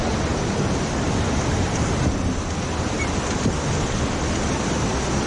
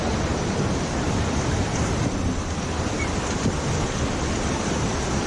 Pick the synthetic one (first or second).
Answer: second